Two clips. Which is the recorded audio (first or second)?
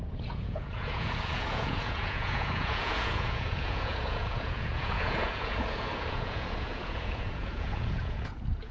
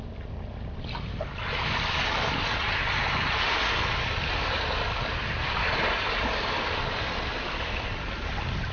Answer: second